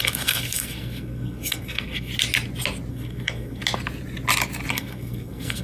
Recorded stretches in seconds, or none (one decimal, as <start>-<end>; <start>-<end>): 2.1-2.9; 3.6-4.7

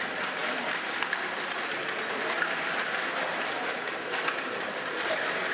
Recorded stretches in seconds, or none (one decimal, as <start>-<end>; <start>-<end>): 0.0-5.5

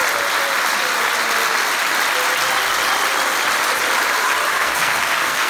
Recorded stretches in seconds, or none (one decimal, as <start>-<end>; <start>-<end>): 0.0-4.5